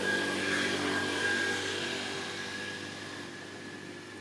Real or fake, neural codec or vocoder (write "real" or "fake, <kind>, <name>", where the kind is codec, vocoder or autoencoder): real